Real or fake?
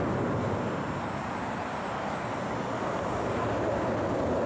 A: real